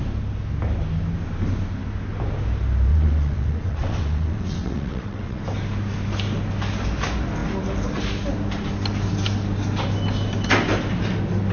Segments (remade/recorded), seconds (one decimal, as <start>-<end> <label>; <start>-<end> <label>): 0.0-2.9 recorded; 2.9-5.4 remade; 5.4-11.5 recorded